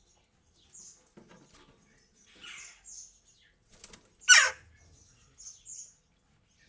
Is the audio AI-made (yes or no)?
no